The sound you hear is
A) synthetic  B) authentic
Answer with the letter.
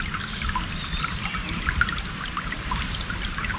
B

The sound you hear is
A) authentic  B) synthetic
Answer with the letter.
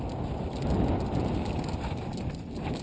A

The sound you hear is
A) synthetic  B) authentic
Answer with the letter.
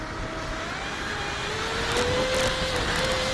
B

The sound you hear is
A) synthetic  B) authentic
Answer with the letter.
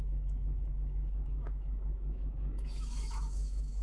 A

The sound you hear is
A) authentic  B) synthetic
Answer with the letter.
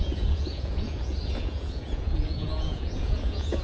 B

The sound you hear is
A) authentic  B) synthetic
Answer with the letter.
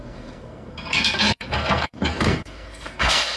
B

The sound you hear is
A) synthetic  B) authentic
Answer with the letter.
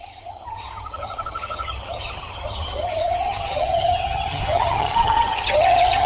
A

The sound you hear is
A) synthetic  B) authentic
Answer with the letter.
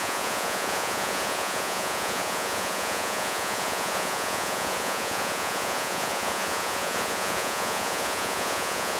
A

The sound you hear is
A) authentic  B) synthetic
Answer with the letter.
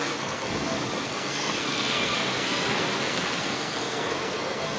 B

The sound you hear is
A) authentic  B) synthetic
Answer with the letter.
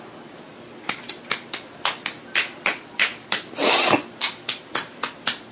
A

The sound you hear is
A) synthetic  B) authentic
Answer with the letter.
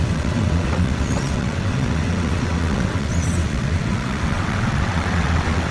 A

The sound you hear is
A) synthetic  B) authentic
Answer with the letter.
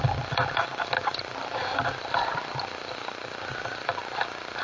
B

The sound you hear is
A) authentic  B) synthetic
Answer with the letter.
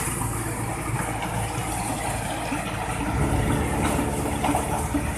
A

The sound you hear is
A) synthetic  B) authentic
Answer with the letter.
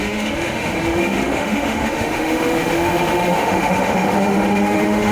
A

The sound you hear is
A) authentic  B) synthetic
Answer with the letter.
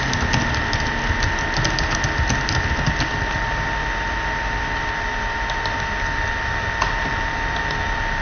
A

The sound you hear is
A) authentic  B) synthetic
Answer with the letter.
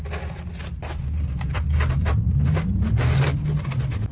A